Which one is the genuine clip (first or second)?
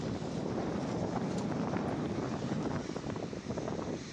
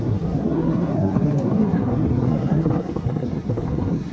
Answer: first